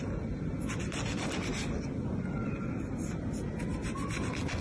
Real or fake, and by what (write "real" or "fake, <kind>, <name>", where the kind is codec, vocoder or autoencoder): real